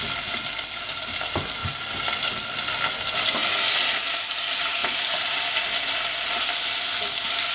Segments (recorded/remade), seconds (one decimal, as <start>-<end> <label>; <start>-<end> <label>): 0.0-7.5 recorded